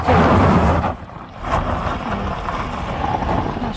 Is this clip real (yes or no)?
no